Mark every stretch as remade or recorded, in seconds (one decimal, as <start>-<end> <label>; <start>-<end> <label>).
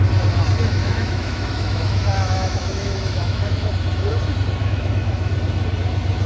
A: 0.0-0.8 recorded; 0.8-3.7 remade; 3.7-4.6 recorded; 4.6-5.3 remade; 5.3-6.3 recorded